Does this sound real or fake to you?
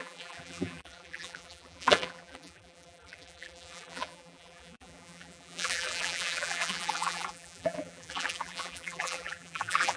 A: fake